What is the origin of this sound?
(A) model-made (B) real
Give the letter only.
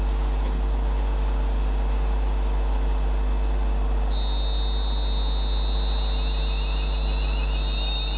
B